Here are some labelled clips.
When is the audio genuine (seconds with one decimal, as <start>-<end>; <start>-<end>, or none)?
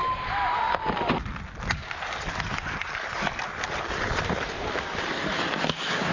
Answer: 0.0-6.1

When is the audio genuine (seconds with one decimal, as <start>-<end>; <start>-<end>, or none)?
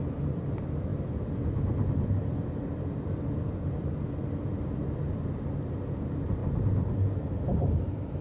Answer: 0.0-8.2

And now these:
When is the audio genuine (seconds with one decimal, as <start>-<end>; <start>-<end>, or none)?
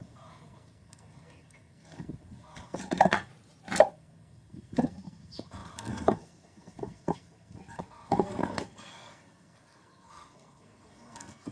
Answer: 3.3-3.9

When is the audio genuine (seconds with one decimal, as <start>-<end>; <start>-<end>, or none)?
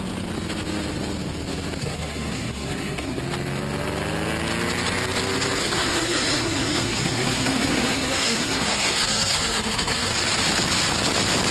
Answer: 0.0-1.8; 3.2-5.6; 10.1-11.5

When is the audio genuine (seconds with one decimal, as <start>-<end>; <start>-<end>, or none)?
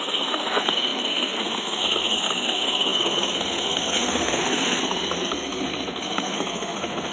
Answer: none